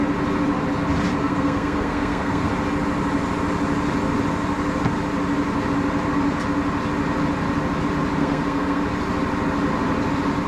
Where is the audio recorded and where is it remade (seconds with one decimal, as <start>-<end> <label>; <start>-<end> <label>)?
0.0-1.2 recorded; 1.2-2.5 remade; 2.5-8.2 recorded; 8.2-8.8 remade; 8.8-10.5 recorded